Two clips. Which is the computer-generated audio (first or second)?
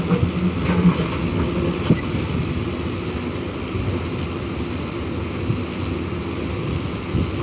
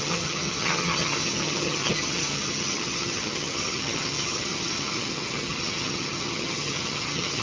second